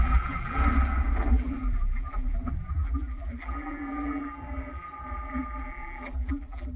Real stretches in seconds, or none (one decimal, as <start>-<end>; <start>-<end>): 0.6-1.3